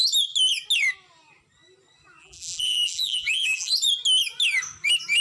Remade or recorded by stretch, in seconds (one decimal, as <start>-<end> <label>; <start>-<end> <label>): 0.0-2.2 recorded; 2.2-3.7 remade; 3.7-5.2 recorded